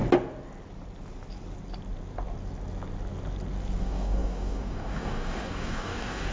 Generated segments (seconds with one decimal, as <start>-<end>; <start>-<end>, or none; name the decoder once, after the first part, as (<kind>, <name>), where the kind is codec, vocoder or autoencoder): 3.8-6.3 (codec, DAC)

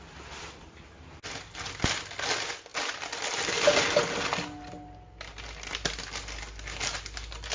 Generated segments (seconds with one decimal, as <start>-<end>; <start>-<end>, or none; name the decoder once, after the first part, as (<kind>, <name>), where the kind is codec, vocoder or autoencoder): none

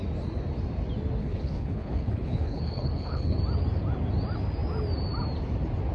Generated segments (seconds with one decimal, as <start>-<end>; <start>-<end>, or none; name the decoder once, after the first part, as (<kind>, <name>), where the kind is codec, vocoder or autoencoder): 1.2-3.4 (codec, HILCodec)

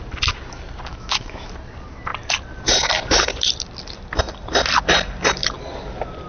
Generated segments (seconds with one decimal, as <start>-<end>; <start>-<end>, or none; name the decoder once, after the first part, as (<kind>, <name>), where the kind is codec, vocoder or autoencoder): 0.9-1.5 (autoencoder, DAC-VAE)